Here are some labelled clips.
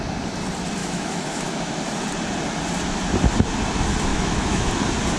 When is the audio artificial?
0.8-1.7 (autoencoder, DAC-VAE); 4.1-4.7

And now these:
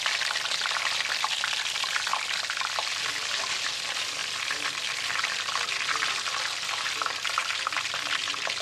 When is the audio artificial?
none

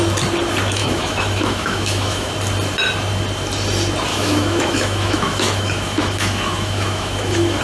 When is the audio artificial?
0.8-2.3 (autoencoder, DAC-VAE); 4.1-7.6

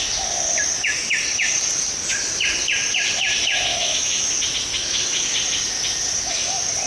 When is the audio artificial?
3.7-4.3 (autoencoder, DAC-VAE)

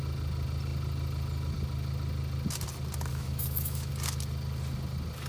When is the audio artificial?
3.1-3.9 (autoencoder, DAC-VAE)

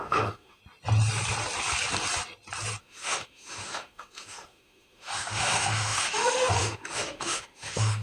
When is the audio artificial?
0.0-0.6 (autoencoder, DAC-VAE); 2.8-8.0

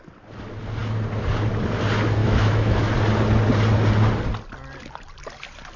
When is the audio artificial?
2.2-2.9 (autoencoder, DAC-VAE)

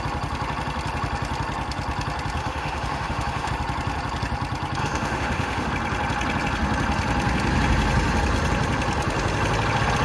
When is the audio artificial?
2.4-3.5 (autoencoder, DAC-VAE); 4.8-5.7